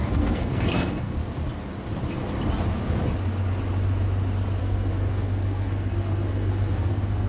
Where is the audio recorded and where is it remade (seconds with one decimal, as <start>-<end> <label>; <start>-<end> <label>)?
0.0-1.2 remade; 1.2-4.6 recorded; 4.6-7.3 remade